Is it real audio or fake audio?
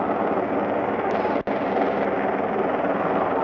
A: real